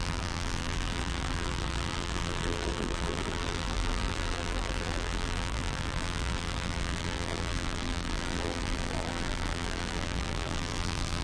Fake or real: fake